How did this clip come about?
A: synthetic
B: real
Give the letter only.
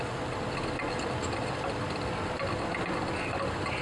B